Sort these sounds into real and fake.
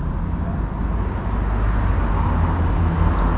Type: real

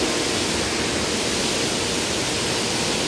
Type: real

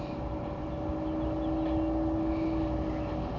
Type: real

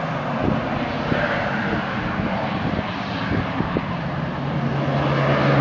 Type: real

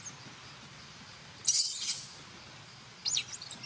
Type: real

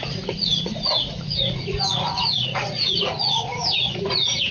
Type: fake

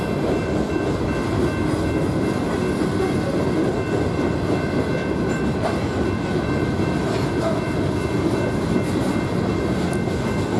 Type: real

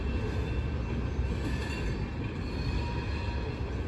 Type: real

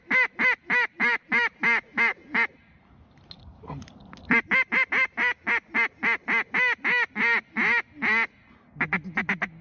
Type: real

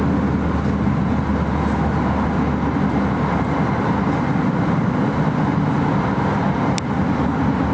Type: real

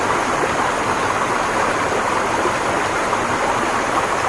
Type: real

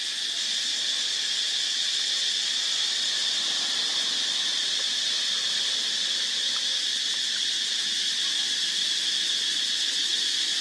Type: real